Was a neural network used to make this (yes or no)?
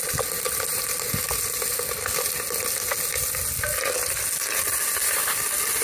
no